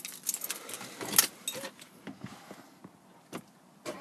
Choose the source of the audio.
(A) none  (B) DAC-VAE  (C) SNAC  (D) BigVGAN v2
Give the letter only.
A